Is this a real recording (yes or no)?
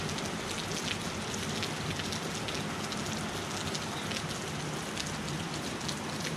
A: yes